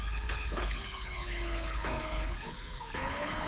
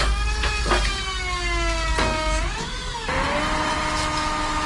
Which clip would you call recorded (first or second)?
second